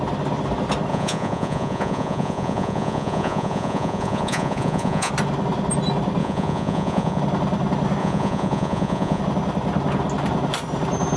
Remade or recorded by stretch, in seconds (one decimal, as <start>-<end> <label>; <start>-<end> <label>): 0.0-0.9 recorded; 0.9-5.1 remade; 5.1-6.2 recorded; 6.2-7.2 remade; 7.2-8.0 recorded; 8.0-9.2 remade; 9.2-11.2 recorded